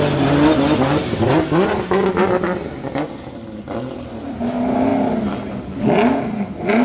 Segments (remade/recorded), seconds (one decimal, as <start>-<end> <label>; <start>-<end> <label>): 0.0-6.8 recorded